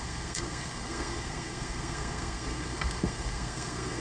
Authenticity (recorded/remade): remade